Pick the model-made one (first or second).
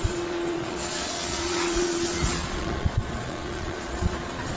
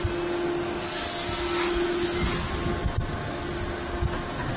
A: first